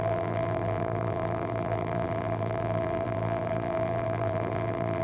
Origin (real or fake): fake